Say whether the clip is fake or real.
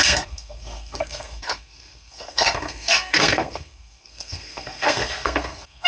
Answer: fake